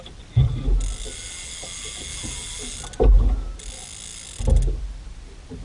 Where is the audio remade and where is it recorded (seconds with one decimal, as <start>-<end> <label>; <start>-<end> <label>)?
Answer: 0.0-5.6 recorded